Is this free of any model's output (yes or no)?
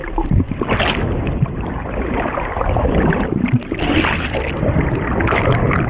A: yes